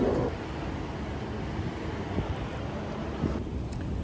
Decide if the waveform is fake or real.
real